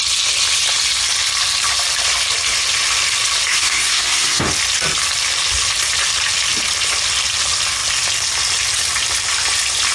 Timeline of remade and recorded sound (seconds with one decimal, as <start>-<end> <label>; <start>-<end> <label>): 0.0-3.5 recorded; 3.5-4.4 remade; 4.4-9.9 recorded